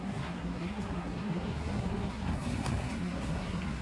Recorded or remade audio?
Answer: remade